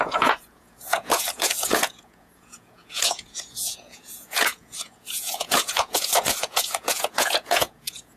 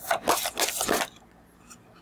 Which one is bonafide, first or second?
second